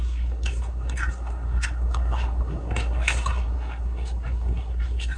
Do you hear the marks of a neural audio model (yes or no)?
yes